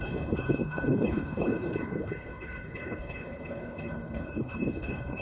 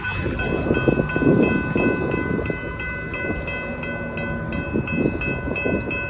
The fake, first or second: first